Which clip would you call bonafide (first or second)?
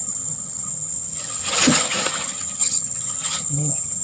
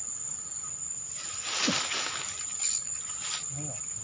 second